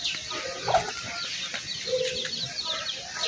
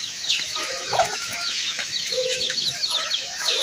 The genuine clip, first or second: first